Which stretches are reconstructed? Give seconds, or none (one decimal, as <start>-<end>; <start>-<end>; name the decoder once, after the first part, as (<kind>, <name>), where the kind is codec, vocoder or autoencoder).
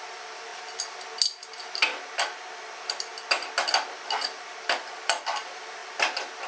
0.0-0.5 (vocoder, BigVGAN v2); 2.5-3.1; 3.9-5.8